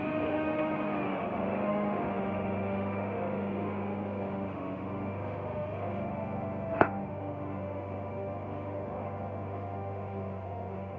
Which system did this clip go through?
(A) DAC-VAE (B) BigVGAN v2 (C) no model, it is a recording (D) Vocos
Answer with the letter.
A